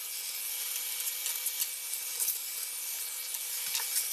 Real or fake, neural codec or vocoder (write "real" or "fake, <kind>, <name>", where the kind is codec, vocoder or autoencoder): real